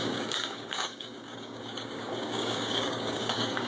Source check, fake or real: fake